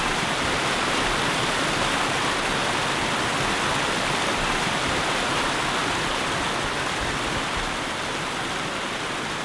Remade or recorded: recorded